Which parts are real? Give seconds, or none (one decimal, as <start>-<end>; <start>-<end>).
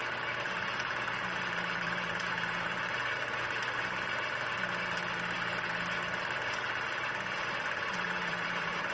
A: 3.6-7.9